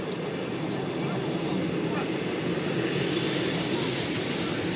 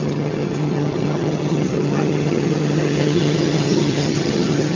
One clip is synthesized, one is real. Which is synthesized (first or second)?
second